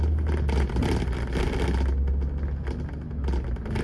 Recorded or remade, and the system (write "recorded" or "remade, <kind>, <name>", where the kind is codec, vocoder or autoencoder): recorded